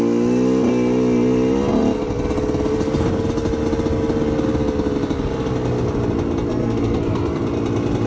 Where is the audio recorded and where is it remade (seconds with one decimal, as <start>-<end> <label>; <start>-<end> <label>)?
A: 0.0-6.5 recorded; 6.5-7.4 remade; 7.4-8.1 recorded